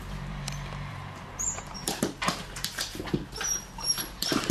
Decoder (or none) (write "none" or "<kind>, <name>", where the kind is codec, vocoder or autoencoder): vocoder, BigVGAN v2